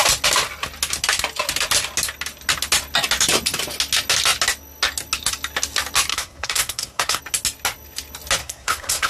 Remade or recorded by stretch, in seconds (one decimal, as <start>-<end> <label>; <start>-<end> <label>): 0.0-6.1 recorded; 6.1-7.2 remade; 7.2-8.4 recorded; 8.4-9.1 remade